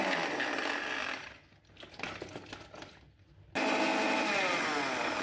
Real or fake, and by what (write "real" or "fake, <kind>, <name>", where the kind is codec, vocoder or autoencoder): real